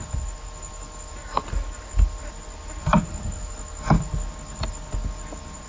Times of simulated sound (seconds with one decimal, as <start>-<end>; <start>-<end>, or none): none